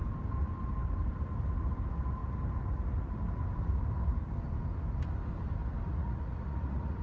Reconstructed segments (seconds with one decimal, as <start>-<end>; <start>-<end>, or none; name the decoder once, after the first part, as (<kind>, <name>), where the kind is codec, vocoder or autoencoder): 5.9-7.0 (vocoder, Vocos)